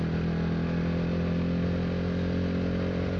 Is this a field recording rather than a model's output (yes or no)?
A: yes